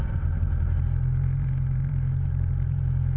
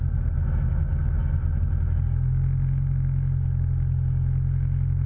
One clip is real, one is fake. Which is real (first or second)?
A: second